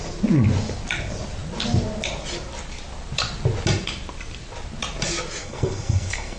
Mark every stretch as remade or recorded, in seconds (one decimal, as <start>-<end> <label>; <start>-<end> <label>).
0.0-5.4 recorded; 5.4-6.4 remade